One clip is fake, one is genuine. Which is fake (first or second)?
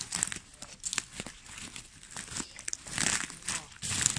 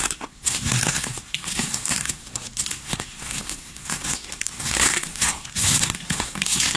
second